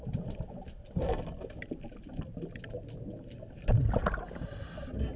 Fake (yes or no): no